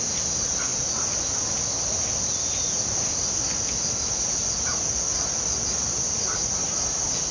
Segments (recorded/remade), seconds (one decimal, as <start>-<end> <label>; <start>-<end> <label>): 0.0-7.3 recorded